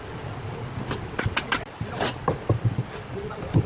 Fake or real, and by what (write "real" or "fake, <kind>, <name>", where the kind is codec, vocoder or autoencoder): real